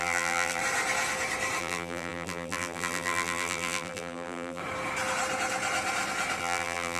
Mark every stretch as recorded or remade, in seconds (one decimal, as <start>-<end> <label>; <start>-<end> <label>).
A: 0.0-0.6 remade; 0.6-1.6 recorded; 1.6-4.6 remade; 4.6-6.4 recorded; 6.4-7.0 remade